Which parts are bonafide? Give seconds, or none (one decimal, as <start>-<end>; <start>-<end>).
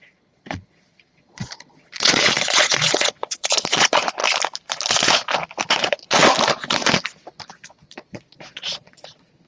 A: 4.2-5.7; 6.2-7.5